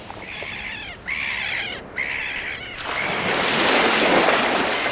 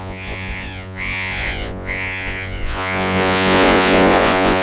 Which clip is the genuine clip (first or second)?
first